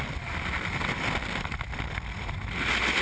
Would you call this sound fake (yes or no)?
no